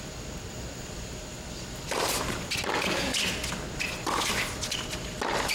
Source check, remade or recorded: recorded